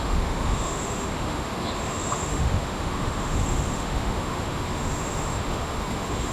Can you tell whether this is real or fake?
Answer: fake